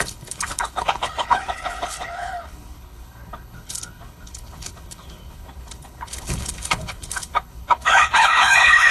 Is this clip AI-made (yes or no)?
yes